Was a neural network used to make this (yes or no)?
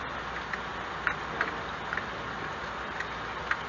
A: no